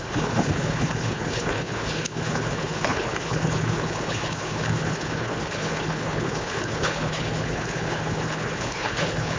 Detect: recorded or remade remade